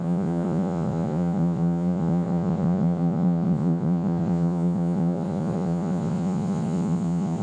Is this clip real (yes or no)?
no